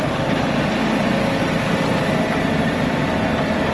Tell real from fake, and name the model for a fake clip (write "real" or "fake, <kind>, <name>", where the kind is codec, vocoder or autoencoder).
real